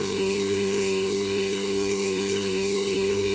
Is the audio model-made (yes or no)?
yes